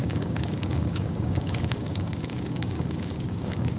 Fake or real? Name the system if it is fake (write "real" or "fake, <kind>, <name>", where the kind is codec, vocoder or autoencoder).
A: fake, codec, DAC